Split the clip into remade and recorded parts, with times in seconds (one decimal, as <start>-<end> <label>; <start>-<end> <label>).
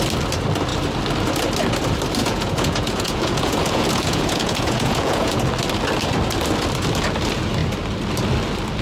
0.0-2.2 recorded; 2.2-5.4 remade; 5.4-8.8 recorded